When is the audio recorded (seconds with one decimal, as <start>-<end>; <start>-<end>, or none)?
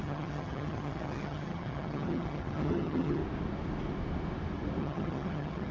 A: 3.2-4.8